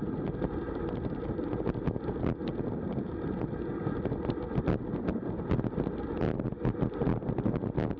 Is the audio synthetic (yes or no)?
no